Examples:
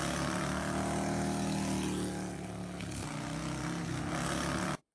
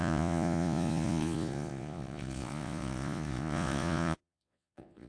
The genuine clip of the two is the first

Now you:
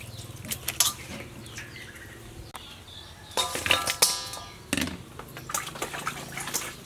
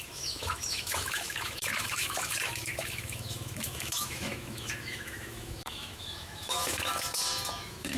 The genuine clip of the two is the first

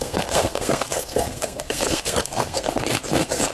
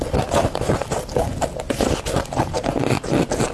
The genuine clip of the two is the second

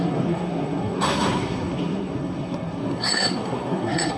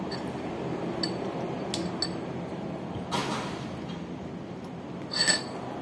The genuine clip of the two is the second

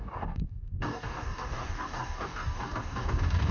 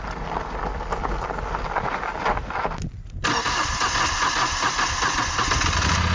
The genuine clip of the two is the second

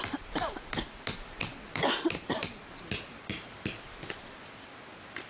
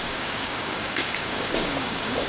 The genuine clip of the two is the first